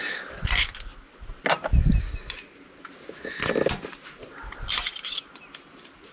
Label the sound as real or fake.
real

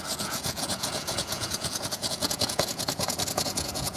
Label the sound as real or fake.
fake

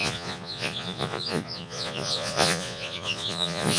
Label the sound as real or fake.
fake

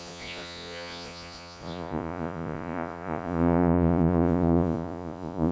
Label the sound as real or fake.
fake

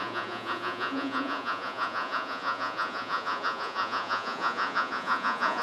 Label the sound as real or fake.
fake